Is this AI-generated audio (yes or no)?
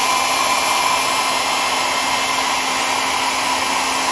no